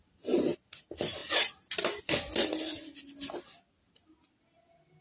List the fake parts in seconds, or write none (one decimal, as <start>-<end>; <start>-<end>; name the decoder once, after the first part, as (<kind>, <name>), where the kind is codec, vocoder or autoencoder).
none